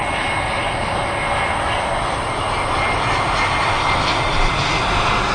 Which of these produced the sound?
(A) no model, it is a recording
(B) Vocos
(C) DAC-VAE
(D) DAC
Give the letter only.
A